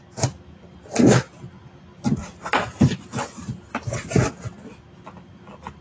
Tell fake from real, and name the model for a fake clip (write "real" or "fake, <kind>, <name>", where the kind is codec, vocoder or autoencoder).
real